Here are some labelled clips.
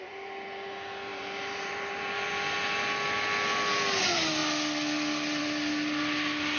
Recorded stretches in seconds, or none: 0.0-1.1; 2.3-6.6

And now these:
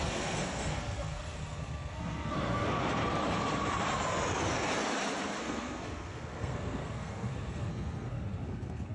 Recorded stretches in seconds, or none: 3.0-5.4

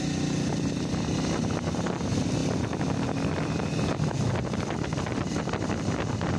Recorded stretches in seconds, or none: 0.0-6.4

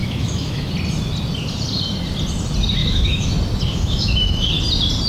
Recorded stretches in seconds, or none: 0.7-2.8; 3.3-3.7; 4.5-5.1

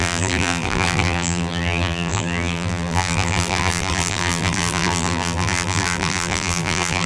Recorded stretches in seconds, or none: none

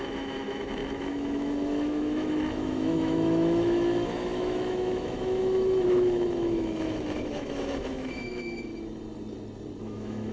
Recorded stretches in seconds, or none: 8.7-9.8

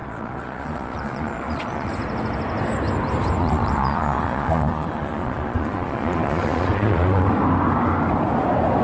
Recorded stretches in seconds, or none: 1.9-3.4; 7.3-8.8